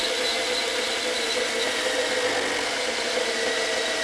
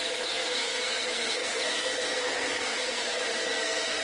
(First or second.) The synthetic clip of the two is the second